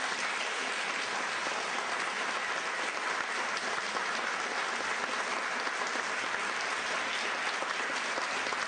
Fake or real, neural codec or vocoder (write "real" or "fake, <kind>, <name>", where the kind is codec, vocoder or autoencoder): real